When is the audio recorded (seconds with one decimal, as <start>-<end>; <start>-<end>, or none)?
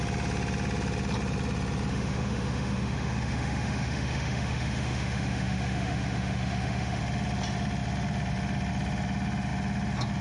0.0-1.9; 7.0-10.2